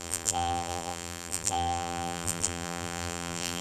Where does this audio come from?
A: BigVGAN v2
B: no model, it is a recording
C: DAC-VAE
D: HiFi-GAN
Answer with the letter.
A